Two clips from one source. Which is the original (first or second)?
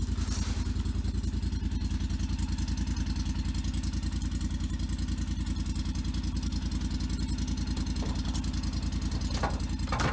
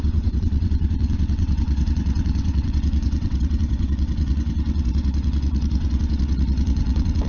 first